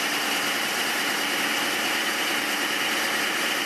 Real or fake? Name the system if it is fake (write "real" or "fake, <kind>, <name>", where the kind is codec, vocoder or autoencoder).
fake, vocoder, BigVGAN v2